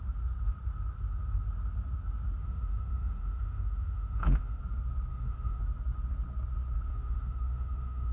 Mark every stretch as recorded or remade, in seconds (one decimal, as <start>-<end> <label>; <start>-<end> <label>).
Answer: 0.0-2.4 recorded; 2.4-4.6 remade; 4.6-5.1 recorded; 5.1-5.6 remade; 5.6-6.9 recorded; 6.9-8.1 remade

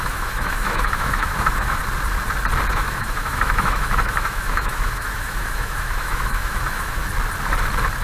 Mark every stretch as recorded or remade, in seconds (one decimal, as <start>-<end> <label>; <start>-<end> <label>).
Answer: 0.0-1.8 remade; 1.8-2.7 recorded; 2.7-7.0 remade; 7.0-8.0 recorded

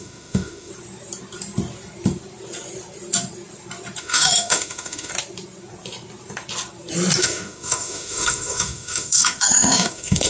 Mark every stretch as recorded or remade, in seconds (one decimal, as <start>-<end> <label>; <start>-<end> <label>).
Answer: 0.0-0.7 remade; 0.7-4.0 recorded; 4.0-5.1 remade; 5.1-7.2 recorded; 7.2-10.3 remade

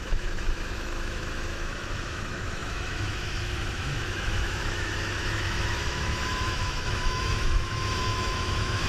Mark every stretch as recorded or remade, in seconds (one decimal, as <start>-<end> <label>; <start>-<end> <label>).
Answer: 0.0-8.9 remade

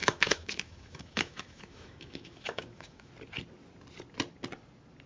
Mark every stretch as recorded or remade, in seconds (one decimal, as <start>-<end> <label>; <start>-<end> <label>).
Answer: 0.0-3.1 remade; 3.1-5.1 recorded

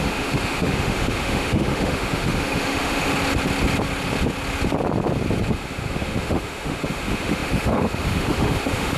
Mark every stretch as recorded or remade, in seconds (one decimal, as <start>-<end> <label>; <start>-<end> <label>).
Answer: 0.0-3.1 remade; 3.1-5.5 recorded; 5.5-9.0 remade

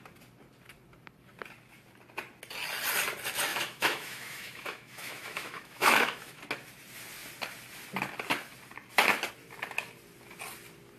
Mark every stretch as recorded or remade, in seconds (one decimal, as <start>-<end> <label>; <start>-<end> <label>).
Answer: 0.0-3.5 recorded; 3.5-6.4 remade; 6.4-11.0 recorded